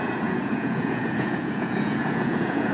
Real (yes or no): no